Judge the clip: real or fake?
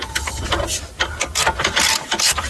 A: real